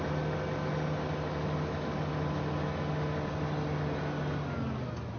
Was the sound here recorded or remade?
recorded